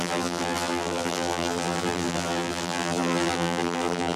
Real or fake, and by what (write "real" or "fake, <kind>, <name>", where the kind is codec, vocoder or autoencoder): fake, vocoder, BigVGAN v2